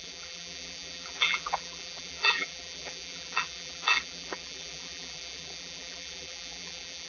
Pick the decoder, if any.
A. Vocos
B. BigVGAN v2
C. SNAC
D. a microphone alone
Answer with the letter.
B